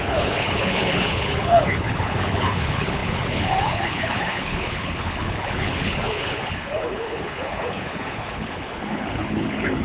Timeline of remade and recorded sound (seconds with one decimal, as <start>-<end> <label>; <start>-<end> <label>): 0.0-9.8 remade